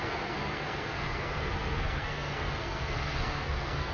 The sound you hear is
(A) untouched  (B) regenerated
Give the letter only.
B